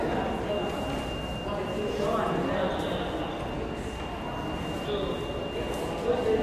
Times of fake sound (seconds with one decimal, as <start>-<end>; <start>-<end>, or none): none

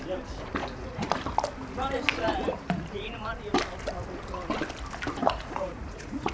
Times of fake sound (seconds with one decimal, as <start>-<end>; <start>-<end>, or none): 0.6-1.1; 2.3-3.2; 5.2-6.3

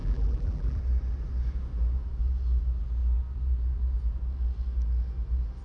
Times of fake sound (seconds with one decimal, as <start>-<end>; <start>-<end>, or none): 0.0-0.8